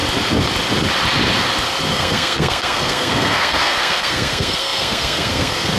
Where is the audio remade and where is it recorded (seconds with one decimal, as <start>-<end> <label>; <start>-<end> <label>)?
0.0-1.9 recorded; 1.9-5.8 remade